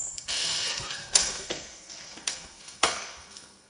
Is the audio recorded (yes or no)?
no